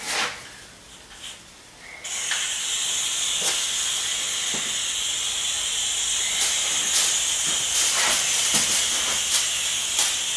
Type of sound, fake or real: real